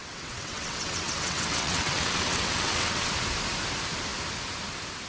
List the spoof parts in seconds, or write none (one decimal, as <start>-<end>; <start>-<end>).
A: 0.0-3.1